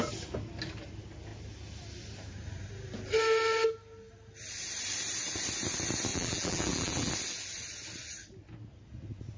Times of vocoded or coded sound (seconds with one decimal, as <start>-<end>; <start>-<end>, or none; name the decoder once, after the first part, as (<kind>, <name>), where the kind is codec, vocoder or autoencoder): 6.1-7.1 (vocoder, BigVGAN v2)